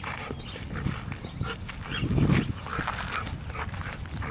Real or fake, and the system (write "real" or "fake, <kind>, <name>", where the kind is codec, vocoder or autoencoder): real